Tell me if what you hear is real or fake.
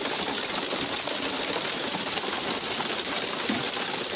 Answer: real